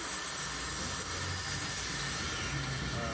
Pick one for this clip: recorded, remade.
recorded